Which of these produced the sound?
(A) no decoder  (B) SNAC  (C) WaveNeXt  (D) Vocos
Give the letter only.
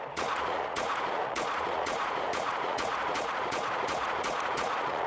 D